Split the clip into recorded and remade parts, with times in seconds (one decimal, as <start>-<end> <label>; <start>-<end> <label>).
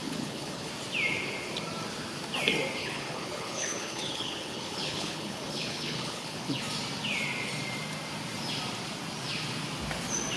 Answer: 0.0-0.7 remade; 0.7-2.8 recorded; 2.8-6.6 remade; 6.6-10.4 recorded